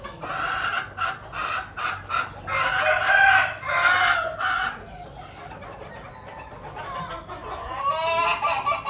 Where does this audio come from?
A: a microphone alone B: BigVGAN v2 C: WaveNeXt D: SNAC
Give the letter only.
A